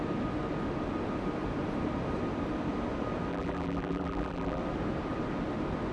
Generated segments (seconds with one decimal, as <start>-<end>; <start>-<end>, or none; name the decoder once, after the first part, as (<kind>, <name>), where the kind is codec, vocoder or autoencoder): 3.3-4.6 (vocoder, BigVGAN v2)